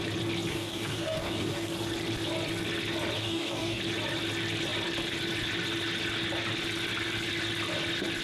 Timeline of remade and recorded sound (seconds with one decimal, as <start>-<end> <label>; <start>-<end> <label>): 0.0-0.5 recorded; 0.5-1.7 remade; 1.7-3.2 recorded; 3.2-3.8 remade; 3.8-8.2 recorded